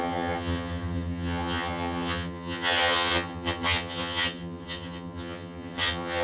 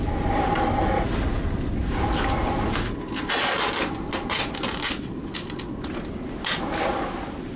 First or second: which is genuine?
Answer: second